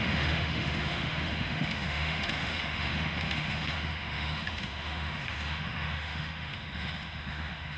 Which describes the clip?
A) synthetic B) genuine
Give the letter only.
A